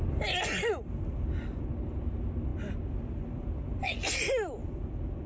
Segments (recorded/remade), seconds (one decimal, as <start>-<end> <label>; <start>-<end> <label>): 0.0-5.3 recorded